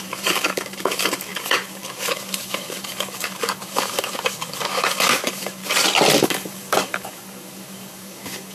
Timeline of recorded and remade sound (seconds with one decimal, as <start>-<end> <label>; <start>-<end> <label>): 0.0-5.6 remade; 5.6-6.2 recorded; 6.2-8.5 remade